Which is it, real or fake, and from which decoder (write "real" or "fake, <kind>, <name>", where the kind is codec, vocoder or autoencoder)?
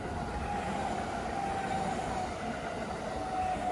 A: real